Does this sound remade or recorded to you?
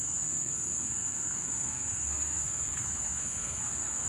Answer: remade